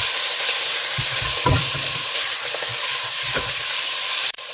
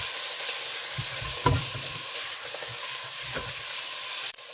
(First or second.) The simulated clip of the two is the first